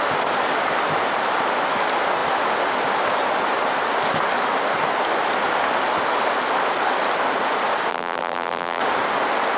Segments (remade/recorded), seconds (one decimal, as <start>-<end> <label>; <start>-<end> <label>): 0.0-7.9 recorded; 7.9-8.8 remade; 8.8-9.6 recorded